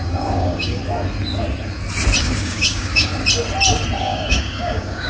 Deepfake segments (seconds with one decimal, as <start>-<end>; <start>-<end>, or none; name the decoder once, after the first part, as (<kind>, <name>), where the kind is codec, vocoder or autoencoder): 0.0-0.8 (codec, DAC); 2.2-3.1; 4.0-5.1